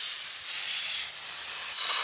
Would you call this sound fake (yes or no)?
no